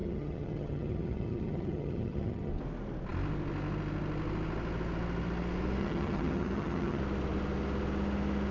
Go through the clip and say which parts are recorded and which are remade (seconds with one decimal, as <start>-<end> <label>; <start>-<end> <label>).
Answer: 0.0-2.5 remade; 2.5-5.8 recorded; 5.8-7.0 remade; 7.0-8.5 recorded